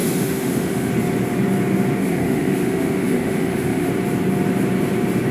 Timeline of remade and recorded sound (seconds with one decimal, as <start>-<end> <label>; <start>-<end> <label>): 0.0-0.9 remade; 0.9-2.0 recorded; 2.0-3.9 remade; 3.9-5.3 recorded